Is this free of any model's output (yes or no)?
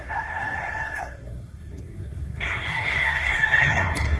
no